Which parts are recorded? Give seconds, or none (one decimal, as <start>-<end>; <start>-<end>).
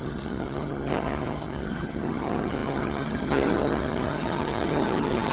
none